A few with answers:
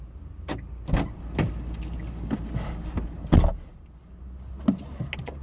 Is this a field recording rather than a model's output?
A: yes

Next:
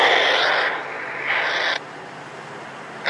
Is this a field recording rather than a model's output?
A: yes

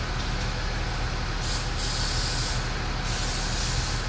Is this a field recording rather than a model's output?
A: yes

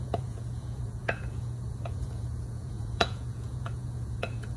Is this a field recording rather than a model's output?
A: no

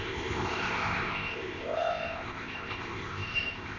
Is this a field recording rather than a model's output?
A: no